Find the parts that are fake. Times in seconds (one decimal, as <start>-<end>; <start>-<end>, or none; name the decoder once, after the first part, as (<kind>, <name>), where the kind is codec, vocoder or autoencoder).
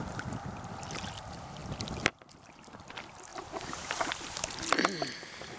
3.3-4.1 (vocoder, BigVGAN v2)